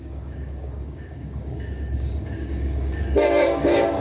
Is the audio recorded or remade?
remade